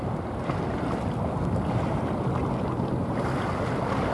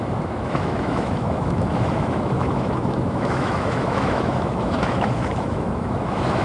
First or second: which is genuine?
first